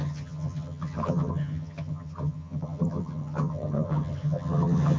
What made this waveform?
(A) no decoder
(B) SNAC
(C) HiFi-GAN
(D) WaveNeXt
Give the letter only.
C